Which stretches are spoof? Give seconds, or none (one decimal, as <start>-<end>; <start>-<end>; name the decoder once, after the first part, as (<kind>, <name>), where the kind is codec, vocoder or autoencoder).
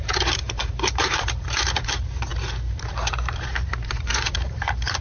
0.0-2.3 (vocoder, BigVGAN v2); 2.9-5.0